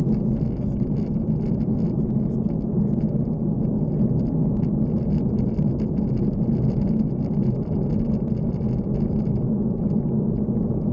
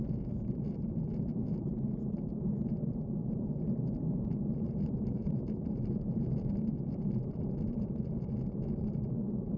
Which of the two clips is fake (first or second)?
second